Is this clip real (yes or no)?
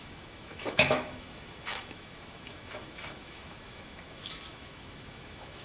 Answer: no